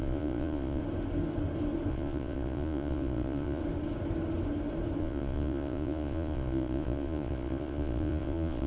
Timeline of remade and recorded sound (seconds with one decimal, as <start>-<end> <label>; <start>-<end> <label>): 0.0-0.8 remade; 0.8-1.9 recorded; 1.9-3.6 remade; 3.6-5.0 recorded; 5.0-8.7 remade